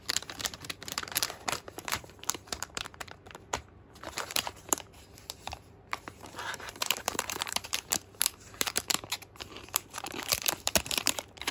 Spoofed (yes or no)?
yes